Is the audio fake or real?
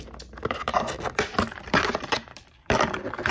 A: fake